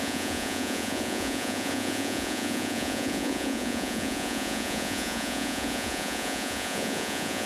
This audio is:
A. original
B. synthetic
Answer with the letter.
B